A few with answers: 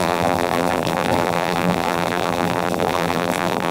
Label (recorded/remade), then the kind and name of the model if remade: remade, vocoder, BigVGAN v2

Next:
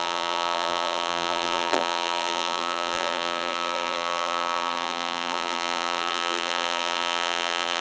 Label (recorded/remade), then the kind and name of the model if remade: remade, vocoder, BigVGAN v2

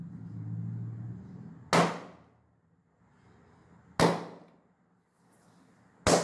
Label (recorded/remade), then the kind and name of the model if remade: recorded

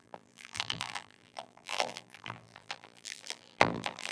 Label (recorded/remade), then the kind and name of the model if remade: remade, vocoder, BigVGAN v2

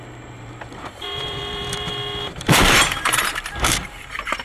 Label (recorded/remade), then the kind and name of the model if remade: remade, vocoder, BigVGAN v2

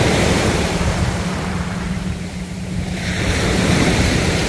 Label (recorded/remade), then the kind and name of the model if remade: remade, vocoder, BigVGAN v2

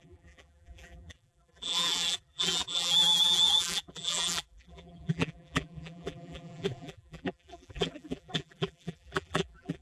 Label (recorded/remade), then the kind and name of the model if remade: remade, vocoder, BigVGAN v2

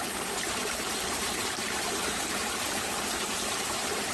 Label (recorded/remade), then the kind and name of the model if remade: remade, vocoder, BigVGAN v2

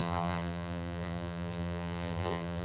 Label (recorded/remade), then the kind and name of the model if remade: remade, vocoder, BigVGAN v2